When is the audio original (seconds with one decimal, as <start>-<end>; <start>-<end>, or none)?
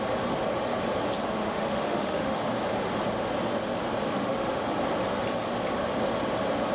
0.0-1.4; 2.5-4.0; 4.6-6.7